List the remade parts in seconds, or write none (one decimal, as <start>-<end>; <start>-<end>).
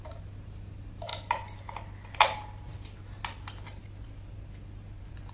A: none